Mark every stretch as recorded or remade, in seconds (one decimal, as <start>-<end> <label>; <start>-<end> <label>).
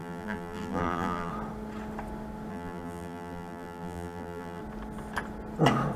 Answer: 0.0-1.3 remade; 1.3-2.5 recorded; 2.5-4.6 remade; 4.6-6.0 recorded